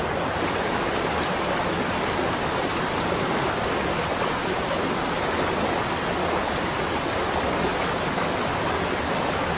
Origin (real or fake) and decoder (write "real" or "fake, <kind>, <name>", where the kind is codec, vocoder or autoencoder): real